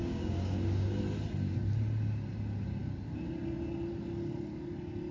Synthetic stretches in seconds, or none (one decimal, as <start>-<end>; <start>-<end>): 0.0-1.0